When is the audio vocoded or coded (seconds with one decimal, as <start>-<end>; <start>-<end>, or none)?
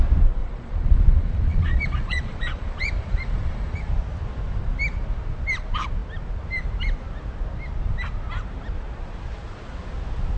0.4-3.9